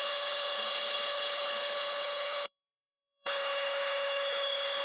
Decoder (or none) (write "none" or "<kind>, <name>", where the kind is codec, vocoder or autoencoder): codec, HILCodec